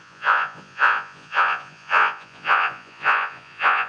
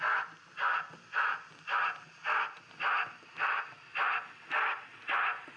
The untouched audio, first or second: second